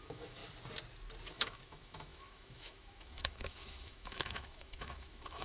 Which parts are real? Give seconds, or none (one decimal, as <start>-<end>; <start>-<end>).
0.4-1.3